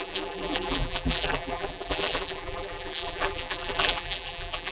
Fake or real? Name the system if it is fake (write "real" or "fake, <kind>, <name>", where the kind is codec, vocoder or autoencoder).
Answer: fake, vocoder, BigVGAN v2